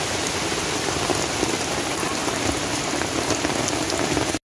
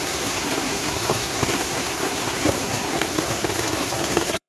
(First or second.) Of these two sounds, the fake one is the second